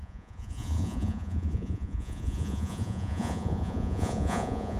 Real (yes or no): no